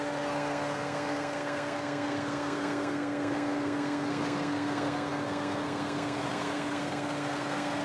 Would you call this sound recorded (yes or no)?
no